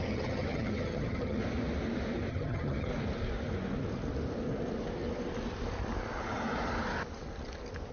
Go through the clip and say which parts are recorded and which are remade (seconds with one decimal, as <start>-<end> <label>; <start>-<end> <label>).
0.0-1.4 remade; 1.4-2.3 recorded; 2.3-2.9 remade; 2.9-7.9 recorded